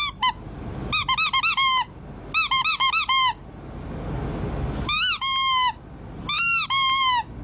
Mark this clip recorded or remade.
recorded